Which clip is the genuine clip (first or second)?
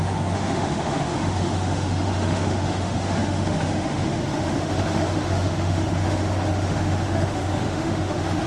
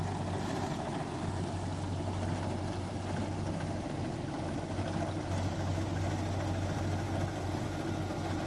second